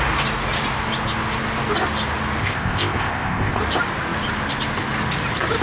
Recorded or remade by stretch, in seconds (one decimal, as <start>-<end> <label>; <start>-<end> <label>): 0.0-2.4 recorded; 2.4-3.6 remade; 3.6-5.6 recorded